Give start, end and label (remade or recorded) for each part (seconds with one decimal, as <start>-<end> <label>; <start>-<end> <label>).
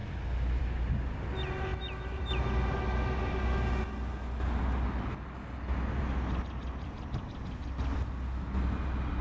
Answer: 0.0-9.2 recorded